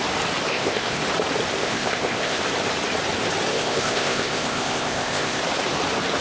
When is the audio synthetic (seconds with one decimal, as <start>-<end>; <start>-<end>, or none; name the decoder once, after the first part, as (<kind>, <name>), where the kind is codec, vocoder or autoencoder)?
0.5-1.0 (codec, ZipCodec); 1.6-2.4; 3.5-5.4